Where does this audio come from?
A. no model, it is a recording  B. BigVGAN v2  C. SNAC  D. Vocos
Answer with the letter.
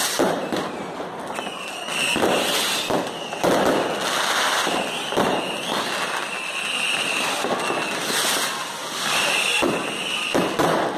A